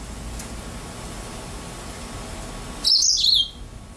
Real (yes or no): yes